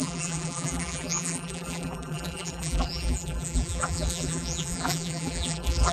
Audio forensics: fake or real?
fake